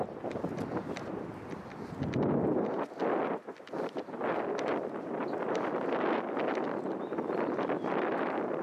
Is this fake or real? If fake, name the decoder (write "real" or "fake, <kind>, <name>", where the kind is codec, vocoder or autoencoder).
real